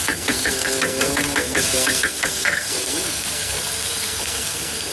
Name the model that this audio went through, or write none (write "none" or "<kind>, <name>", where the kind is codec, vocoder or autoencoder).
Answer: codec, SNAC